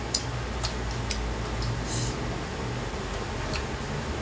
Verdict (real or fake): real